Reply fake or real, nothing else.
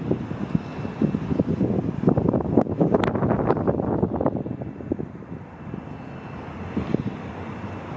real